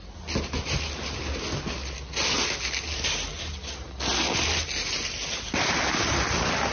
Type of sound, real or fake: real